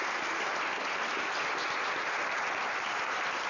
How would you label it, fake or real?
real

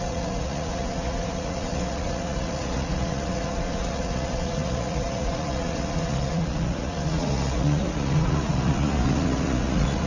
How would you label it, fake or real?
fake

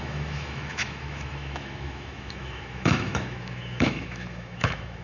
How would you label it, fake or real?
fake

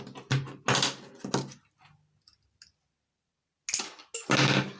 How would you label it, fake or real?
real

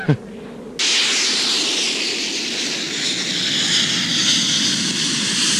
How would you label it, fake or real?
real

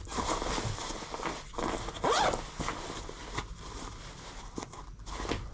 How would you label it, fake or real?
real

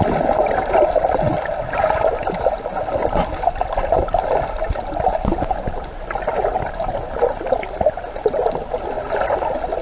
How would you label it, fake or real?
real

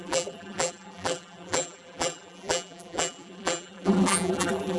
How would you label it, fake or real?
fake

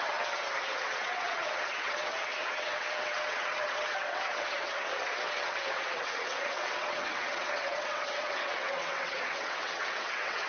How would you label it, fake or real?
fake